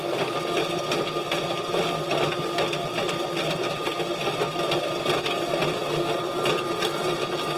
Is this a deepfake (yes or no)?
no